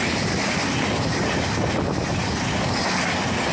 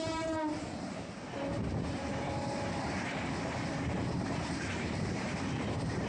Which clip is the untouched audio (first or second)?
first